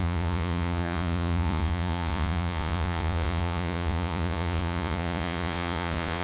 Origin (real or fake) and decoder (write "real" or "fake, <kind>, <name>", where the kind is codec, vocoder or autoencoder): fake, vocoder, Vocos